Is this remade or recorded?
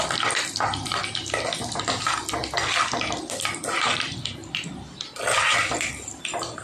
recorded